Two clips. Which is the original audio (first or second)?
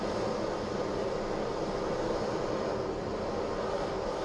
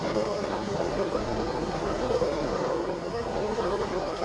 first